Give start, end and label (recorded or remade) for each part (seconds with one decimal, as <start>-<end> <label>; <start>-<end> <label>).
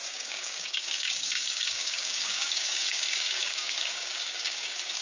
0.0-5.0 remade